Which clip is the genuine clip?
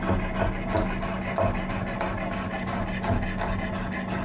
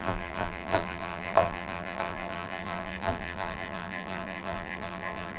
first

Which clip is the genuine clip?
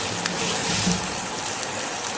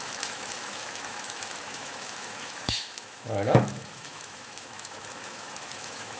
first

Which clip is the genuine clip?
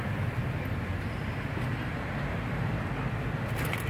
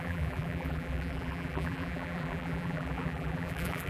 first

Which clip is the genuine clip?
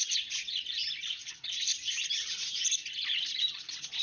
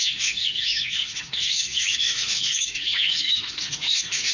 first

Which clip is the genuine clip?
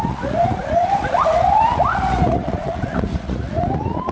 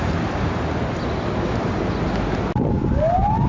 second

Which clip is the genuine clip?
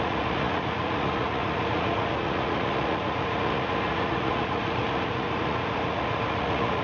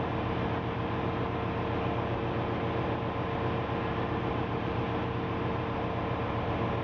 second